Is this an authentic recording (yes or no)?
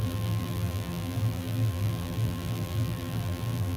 no